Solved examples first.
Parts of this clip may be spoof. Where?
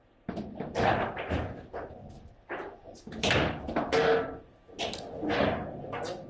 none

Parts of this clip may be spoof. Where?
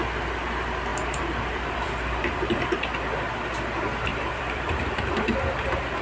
0.9-2.6 (vocoder, BigVGAN v2); 4.1-5.0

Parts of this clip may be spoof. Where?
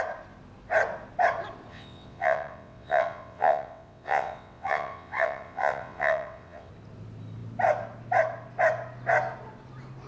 1.7-6.7 (vocoder, WaveNeXt)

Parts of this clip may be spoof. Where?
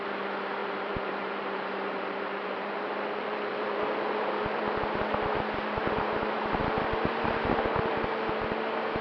0.6-4.6 (vocoder, BigVGAN v2); 5.8-6.5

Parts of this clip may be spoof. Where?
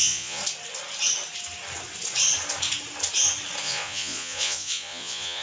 0.0-0.4 (vocoder, Vocos); 3.6-5.4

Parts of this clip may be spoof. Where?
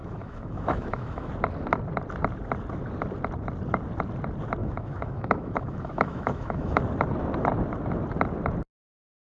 0.0-1.3 (autoencoder, DAC-VAE); 4.6-6.8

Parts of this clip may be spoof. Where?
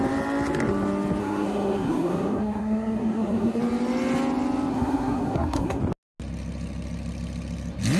1.2-3.6 (codec, SNAC); 4.7-5.8